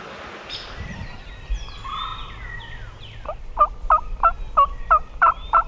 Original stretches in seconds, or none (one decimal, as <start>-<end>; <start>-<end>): 0.0-5.7